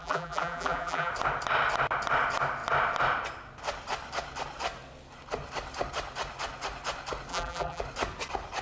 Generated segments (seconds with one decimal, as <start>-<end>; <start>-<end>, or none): 0.0-1.1; 7.3-7.8